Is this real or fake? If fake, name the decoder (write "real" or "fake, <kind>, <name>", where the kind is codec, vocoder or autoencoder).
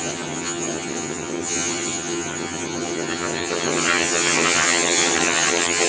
fake, vocoder, HiFi-GAN